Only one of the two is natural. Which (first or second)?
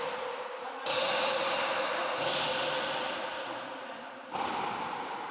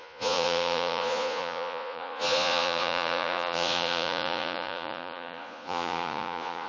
first